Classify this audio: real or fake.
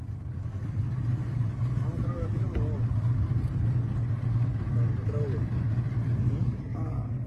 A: real